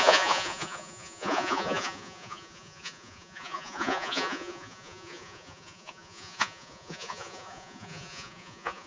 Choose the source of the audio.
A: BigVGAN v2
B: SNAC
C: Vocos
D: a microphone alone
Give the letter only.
C